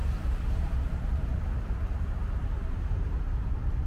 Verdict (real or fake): fake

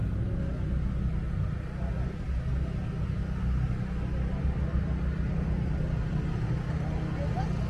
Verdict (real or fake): real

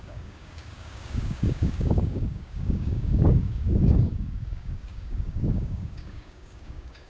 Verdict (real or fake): fake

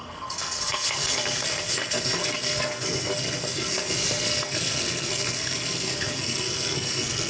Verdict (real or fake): fake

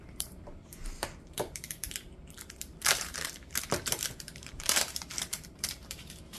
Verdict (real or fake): fake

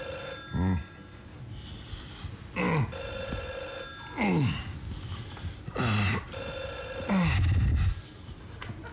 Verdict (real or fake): real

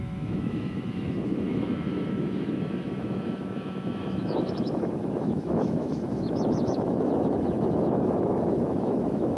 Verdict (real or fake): fake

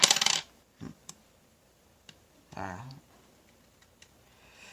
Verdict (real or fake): fake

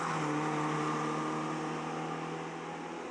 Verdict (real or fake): real